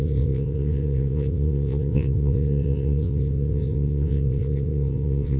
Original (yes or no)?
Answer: no